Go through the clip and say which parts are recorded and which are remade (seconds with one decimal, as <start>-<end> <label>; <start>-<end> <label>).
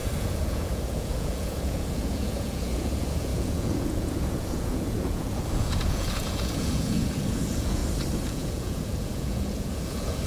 0.0-7.8 remade; 7.8-8.3 recorded; 8.3-10.3 remade